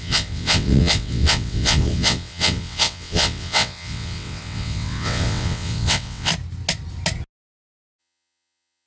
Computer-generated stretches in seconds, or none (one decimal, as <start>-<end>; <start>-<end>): 0.0-6.3; 8.0-8.9